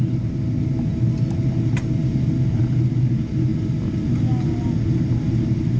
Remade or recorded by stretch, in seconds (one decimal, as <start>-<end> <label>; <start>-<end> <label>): 0.0-5.8 recorded